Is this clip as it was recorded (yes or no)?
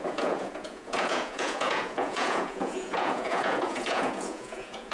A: no